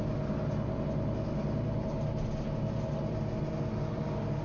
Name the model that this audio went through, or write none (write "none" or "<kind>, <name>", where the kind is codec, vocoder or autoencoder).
none